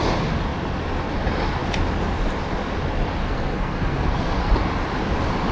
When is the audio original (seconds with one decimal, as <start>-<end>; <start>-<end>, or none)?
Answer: 0.0-3.2; 4.5-5.5